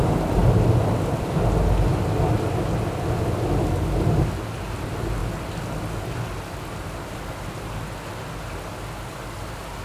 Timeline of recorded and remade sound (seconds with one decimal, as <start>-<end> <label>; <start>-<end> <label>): 0.0-9.8 recorded